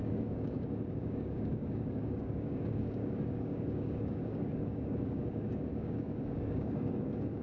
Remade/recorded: remade